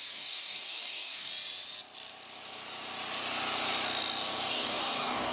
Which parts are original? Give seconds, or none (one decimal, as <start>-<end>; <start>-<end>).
1.3-4.5